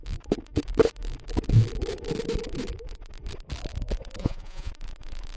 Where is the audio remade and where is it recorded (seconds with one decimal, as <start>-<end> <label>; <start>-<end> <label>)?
0.0-4.2 recorded; 4.2-4.7 remade; 4.7-5.4 recorded